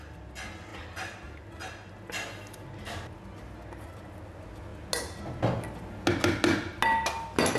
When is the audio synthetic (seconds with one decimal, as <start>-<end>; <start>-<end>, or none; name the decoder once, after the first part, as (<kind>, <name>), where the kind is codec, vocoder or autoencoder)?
none